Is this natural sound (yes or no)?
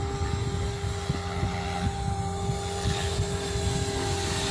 yes